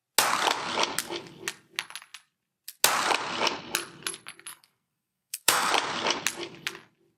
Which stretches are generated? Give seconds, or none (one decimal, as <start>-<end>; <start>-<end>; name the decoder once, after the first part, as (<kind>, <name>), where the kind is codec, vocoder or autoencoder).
4.5-5.7 (codec, SNAC)